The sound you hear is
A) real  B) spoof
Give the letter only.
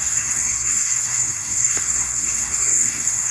B